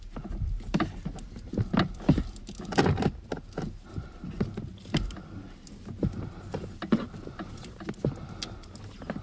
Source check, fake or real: real